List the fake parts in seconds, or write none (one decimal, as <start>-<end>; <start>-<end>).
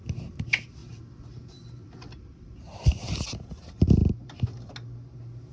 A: 0.8-1.9; 4.0-4.7